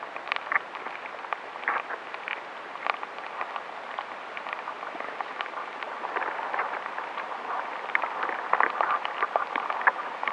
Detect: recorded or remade recorded